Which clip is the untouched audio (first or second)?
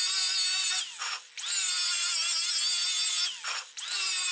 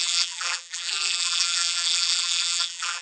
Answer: first